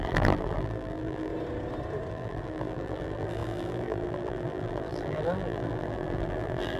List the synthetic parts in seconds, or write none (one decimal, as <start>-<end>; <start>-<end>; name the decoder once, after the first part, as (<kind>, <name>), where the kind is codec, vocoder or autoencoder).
0.0-1.3 (vocoder, BigVGAN v2); 2.1-6.8